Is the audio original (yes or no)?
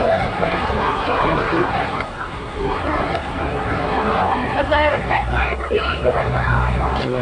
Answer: no